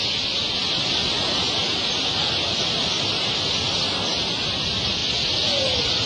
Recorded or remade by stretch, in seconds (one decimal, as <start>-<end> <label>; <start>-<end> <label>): 0.0-6.1 recorded